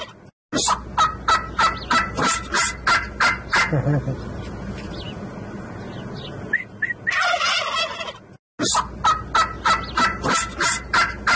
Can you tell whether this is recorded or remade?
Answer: recorded